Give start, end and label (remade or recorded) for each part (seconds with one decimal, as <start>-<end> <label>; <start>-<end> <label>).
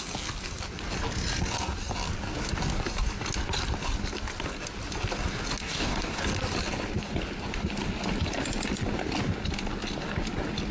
0.0-5.6 recorded; 5.6-6.2 remade; 6.2-10.7 recorded